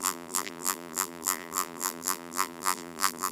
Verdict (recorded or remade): remade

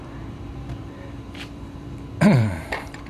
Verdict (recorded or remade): remade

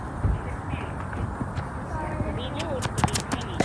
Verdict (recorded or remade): recorded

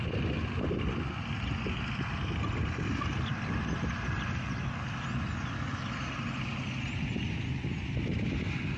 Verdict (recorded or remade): recorded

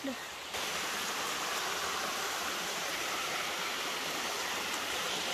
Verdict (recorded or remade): recorded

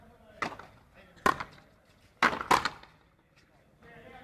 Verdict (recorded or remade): recorded